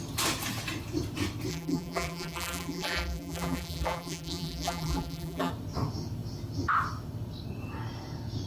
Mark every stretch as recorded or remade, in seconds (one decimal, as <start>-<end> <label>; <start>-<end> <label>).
0.0-1.5 recorded; 1.5-5.5 remade; 5.5-8.5 recorded